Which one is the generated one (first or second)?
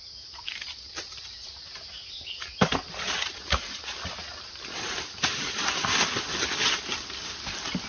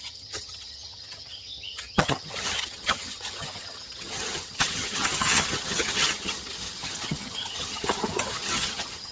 second